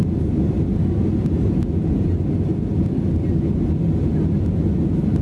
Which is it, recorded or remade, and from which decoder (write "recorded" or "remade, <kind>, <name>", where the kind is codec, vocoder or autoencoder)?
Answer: recorded